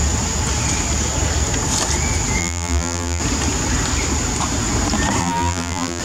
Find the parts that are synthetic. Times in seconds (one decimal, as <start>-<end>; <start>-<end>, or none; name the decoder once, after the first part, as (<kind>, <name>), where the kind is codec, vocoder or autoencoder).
2.4-3.2 (vocoder, BigVGAN v2); 5.2-6.0